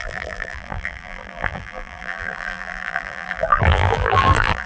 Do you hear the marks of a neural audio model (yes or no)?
yes